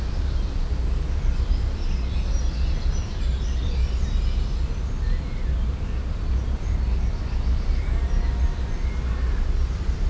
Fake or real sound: real